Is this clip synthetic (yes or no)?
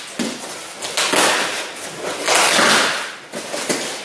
no